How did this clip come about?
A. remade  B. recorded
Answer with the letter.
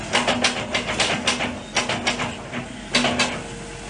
B